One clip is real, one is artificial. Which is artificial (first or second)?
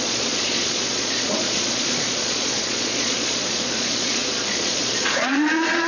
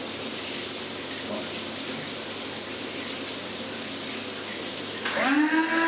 first